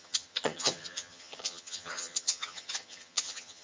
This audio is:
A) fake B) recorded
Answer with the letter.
A